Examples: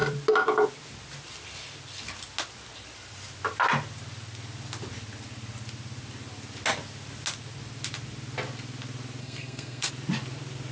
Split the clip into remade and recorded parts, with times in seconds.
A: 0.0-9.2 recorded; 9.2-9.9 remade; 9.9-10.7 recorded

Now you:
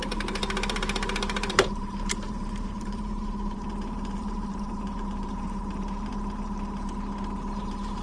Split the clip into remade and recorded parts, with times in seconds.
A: 0.0-0.4 remade; 0.4-1.5 recorded; 1.5-6.1 remade; 6.1-7.6 recorded; 7.6-8.0 remade

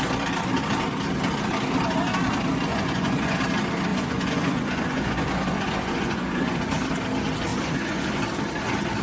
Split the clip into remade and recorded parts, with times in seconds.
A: 0.0-2.7 recorded; 2.7-3.4 remade; 3.4-3.9 recorded; 3.9-6.6 remade; 6.6-7.5 recorded; 7.5-8.1 remade; 8.1-9.0 recorded

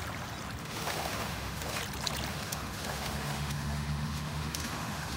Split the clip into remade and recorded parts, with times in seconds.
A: 0.0-0.6 recorded; 0.6-1.8 remade; 1.8-2.3 recorded; 2.3-5.2 remade

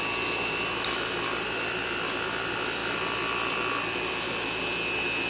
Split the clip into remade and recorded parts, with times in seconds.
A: 0.0-5.3 recorded

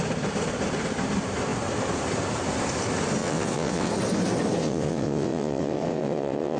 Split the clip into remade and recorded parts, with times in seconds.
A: 0.0-3.2 recorded; 3.2-3.9 remade; 3.9-4.6 recorded; 4.6-6.6 remade

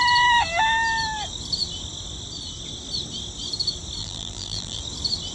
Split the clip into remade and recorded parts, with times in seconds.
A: 0.0-4.0 recorded; 4.0-4.8 remade; 4.8-5.3 recorded